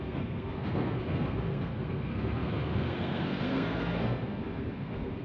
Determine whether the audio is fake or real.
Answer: fake